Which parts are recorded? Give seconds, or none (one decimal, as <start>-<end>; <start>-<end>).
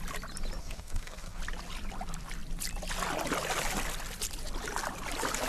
0.0-0.6; 1.4-5.5